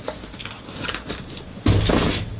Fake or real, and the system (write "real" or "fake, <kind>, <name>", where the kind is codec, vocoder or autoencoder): real